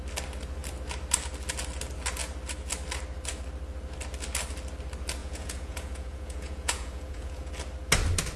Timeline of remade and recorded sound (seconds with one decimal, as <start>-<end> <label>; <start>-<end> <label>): 0.0-5.2 recorded; 5.2-7.5 remade; 7.5-8.4 recorded